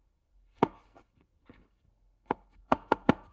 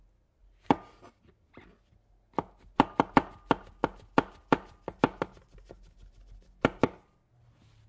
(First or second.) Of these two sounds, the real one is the second